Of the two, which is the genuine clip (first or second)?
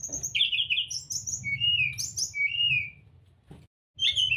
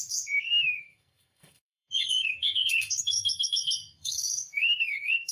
first